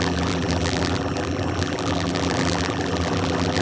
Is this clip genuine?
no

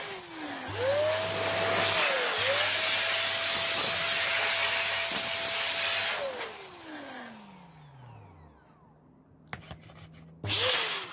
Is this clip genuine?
yes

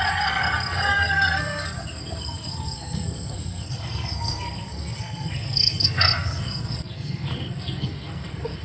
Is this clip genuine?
no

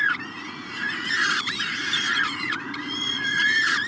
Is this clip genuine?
no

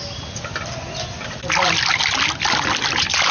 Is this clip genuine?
yes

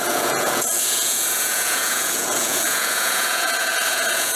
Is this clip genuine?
no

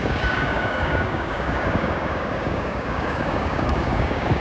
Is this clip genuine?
no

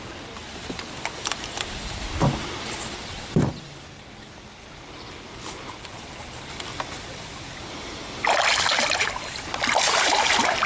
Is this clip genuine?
yes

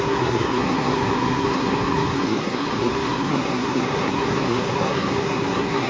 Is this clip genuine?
no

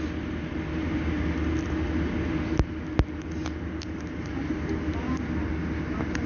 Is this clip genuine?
yes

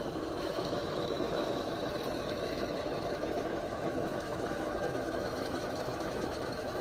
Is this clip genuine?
no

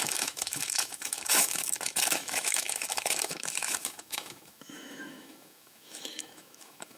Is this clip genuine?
no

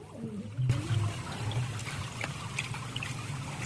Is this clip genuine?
yes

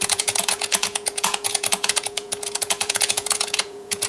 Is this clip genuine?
no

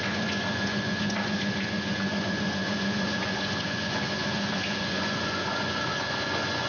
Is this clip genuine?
no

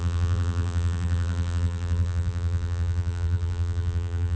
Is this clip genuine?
no